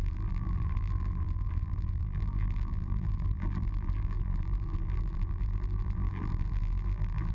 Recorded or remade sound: remade